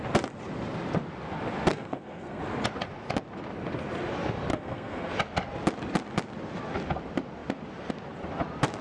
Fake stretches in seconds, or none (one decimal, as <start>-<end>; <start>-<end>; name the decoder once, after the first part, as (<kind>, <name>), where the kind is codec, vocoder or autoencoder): 1.7-2.4 (codec, SNAC); 4.5-5.1